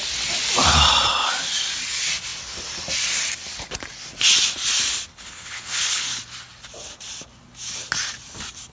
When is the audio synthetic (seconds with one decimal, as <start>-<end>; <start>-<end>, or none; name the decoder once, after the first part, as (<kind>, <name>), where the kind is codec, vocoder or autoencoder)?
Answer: 5.1-6.2 (codec, HILCodec)